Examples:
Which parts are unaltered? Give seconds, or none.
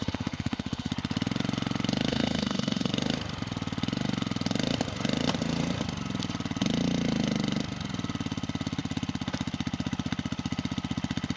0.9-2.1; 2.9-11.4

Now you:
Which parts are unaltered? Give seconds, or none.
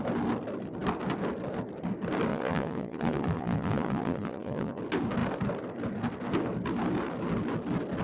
0.0-2.3; 4.8-8.0